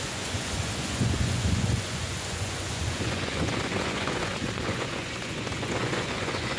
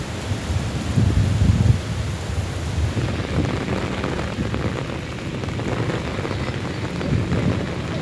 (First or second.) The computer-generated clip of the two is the first